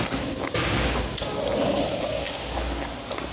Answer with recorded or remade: recorded